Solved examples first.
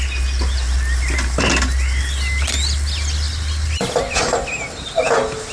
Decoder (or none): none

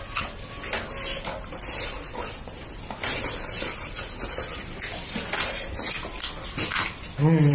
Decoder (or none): none